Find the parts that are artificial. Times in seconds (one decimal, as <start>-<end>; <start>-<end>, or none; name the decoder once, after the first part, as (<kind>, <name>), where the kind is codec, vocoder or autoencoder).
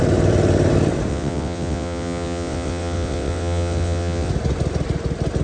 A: 1.1-4.3 (vocoder, WaveNeXt)